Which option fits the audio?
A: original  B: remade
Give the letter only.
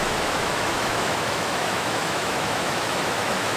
B